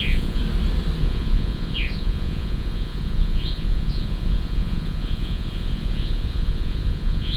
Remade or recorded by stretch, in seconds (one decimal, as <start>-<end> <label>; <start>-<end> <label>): 0.0-0.4 remade; 0.4-1.0 recorded; 1.0-7.4 remade